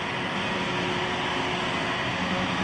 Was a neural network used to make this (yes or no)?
no